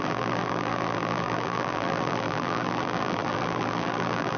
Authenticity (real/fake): fake